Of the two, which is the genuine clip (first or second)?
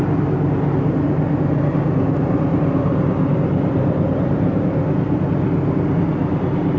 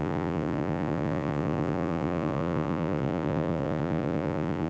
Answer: first